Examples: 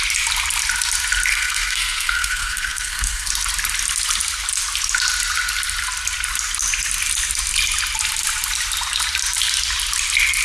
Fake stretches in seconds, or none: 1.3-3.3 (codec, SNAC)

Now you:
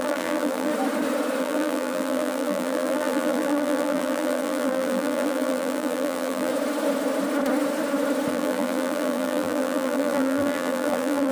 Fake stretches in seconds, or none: 0.0-0.7 (vocoder, BigVGAN v2); 1.4-6.5; 8.3-11.3

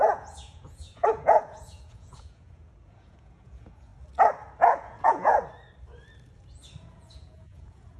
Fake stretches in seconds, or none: 0.0-3.9 (vocoder, Vocos); 4.6-5.3; 6.8-8.0